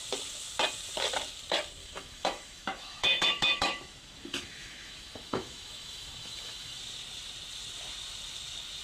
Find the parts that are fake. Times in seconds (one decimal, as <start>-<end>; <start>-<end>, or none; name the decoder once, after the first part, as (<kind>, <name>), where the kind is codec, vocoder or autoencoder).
1.8-6.8 (autoencoder, DAC-VAE)